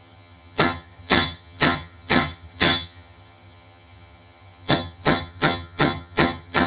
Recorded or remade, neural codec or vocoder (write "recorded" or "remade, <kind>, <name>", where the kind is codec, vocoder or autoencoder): remade, vocoder, HiFi-GAN